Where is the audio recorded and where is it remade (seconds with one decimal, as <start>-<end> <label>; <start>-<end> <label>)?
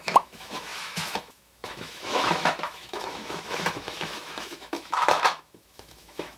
0.0-6.4 remade